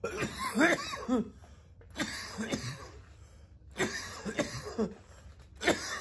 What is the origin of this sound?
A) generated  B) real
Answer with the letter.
B